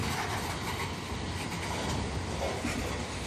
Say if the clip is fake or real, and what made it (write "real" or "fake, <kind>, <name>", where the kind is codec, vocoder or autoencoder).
real